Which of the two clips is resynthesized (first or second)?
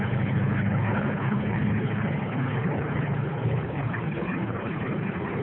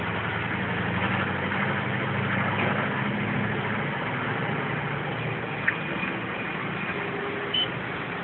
first